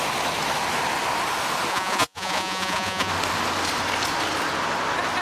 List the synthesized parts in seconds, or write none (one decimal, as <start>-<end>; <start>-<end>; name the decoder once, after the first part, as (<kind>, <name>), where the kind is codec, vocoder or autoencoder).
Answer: 1.7-3.1 (vocoder, Vocos)